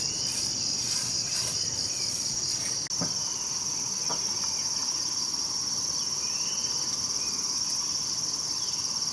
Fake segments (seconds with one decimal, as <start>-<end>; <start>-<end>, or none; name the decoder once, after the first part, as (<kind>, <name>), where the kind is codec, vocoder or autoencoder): none